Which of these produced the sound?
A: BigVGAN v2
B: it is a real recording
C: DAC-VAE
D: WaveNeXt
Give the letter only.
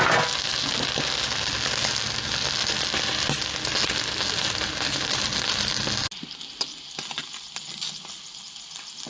B